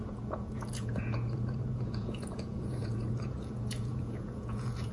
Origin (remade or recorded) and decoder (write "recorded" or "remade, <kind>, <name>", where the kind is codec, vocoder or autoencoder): remade, vocoder, Vocos